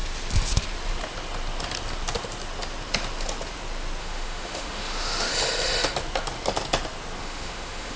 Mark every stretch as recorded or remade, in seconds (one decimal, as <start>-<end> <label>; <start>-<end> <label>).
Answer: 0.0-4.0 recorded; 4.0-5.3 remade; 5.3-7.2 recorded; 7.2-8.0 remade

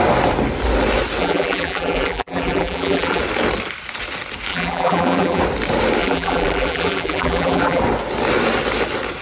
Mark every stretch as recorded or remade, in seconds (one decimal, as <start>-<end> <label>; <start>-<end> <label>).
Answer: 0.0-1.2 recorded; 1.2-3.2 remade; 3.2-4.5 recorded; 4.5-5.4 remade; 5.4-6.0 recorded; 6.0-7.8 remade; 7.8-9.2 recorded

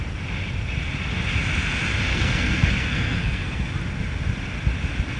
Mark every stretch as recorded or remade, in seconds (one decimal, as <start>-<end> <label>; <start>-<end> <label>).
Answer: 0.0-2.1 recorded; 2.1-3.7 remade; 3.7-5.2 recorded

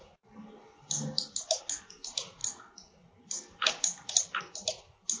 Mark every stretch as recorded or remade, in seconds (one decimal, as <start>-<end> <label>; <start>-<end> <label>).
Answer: 0.0-5.2 recorded

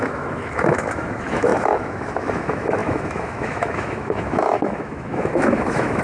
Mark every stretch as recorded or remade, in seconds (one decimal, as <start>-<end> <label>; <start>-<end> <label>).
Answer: 0.0-6.0 remade